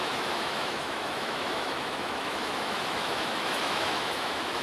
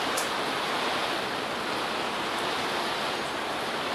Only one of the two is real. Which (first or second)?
second